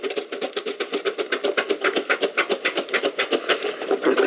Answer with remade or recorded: recorded